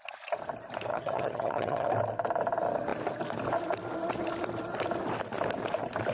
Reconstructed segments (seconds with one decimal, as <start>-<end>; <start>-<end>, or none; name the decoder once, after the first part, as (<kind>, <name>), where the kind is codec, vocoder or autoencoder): 0.9-1.9 (vocoder, HiFi-GAN)